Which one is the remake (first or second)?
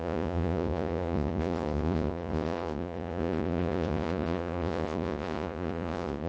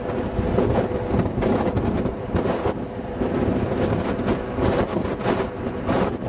first